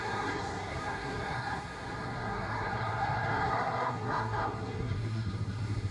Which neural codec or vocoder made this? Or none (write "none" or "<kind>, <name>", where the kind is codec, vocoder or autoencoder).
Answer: codec, SNAC